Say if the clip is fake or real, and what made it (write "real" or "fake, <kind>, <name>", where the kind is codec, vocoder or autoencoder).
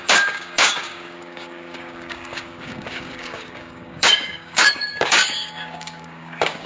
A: fake, codec, DAC